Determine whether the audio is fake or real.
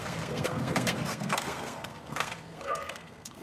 fake